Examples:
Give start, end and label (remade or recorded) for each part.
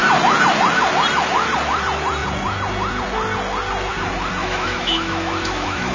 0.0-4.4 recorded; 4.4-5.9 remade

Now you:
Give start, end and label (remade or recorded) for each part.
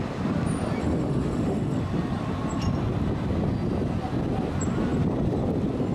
0.0-0.8 recorded; 0.8-1.8 remade; 1.8-5.9 recorded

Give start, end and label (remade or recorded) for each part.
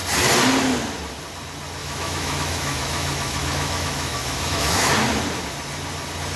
0.0-1.8 recorded; 1.8-4.9 remade; 4.9-6.4 recorded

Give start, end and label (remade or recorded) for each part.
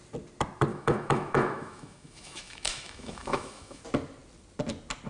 0.0-0.7 recorded; 0.7-3.8 remade; 3.8-5.1 recorded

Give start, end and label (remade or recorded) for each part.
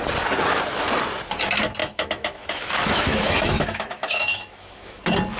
0.0-1.8 recorded; 1.8-5.0 remade; 5.0-5.4 recorded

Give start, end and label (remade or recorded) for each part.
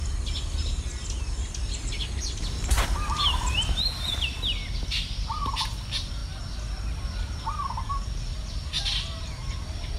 0.0-10.0 recorded